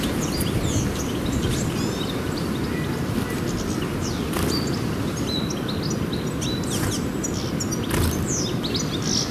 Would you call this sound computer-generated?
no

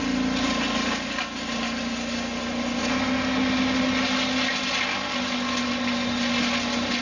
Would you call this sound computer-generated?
no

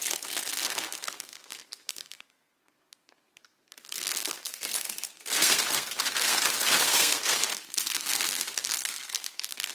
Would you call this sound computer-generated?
yes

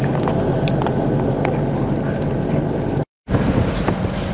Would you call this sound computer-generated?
no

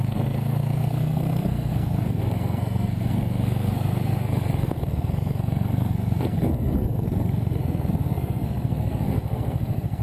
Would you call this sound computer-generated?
yes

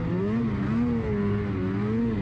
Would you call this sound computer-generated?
no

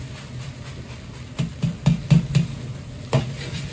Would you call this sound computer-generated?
no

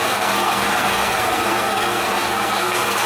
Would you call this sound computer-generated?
yes